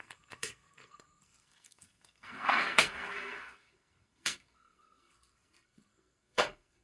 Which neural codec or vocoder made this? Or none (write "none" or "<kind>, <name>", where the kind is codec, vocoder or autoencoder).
codec, SNAC